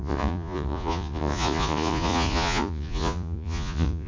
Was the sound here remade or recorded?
remade